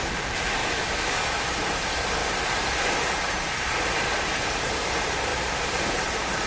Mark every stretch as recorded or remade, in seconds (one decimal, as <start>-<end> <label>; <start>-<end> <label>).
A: 0.0-0.6 recorded; 0.6-1.8 remade; 1.8-6.5 recorded